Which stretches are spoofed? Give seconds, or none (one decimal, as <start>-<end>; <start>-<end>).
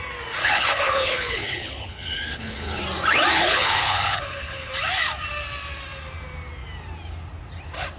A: 0.4-2.8; 3.3-4.7